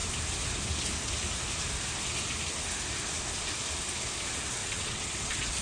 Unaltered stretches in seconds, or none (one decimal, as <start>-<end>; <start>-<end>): 0.0-4.6